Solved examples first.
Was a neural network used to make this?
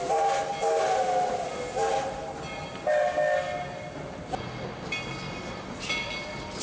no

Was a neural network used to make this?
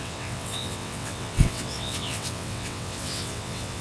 yes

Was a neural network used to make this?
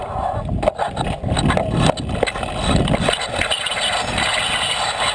no